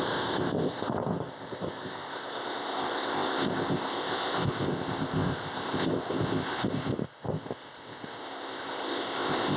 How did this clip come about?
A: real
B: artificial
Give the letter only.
B